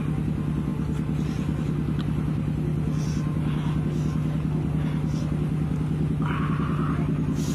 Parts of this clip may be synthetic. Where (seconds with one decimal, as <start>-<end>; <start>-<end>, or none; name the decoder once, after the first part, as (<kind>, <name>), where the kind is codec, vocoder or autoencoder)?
none